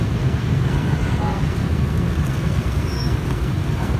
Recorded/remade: remade